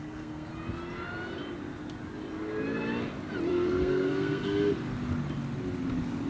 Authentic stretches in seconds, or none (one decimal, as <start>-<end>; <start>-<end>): 0.5-3.5; 4.7-6.3